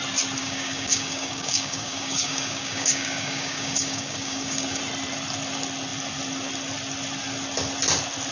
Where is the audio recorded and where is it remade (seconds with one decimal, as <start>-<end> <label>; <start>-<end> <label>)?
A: 0.0-0.4 recorded; 0.4-4.8 remade; 4.8-8.3 recorded